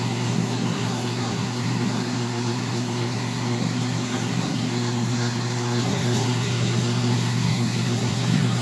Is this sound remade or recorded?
remade